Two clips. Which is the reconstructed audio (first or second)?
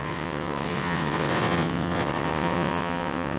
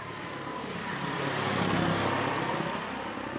first